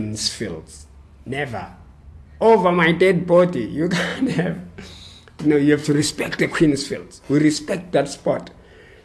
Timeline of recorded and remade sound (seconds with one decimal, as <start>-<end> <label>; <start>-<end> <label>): 0.0-0.8 recorded; 0.8-2.3 remade; 2.3-4.1 recorded; 4.1-5.2 remade; 5.2-5.8 recorded; 5.8-7.7 remade; 7.7-9.0 recorded

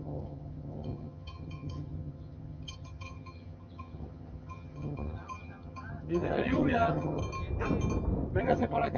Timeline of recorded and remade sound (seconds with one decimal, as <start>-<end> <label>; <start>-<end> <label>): 0.0-7.2 remade; 7.2-8.4 recorded; 8.4-9.0 remade

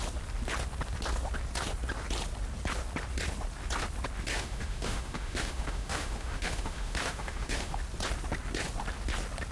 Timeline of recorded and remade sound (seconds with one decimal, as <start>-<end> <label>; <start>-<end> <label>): 0.0-4.3 recorded; 4.3-7.8 remade; 7.8-9.5 recorded

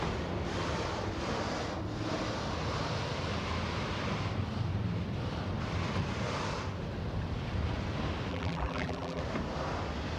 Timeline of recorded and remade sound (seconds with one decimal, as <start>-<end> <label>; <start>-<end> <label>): 0.0-8.3 recorded; 8.3-9.2 remade; 9.2-10.2 recorded

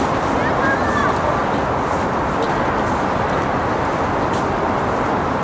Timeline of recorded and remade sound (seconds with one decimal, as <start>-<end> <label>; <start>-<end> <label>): 0.0-1.0 remade; 1.0-4.2 recorded; 4.2-5.4 remade